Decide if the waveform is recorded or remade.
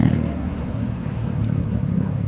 remade